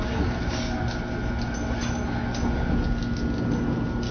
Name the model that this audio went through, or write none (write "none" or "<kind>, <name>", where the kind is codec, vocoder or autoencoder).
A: none